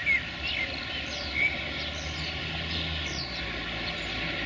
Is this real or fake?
real